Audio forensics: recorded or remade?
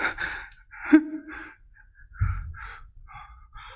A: recorded